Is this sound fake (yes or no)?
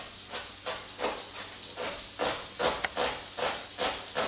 no